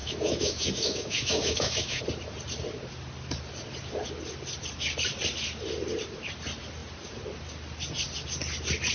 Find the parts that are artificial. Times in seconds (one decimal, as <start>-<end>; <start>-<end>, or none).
0.0-2.0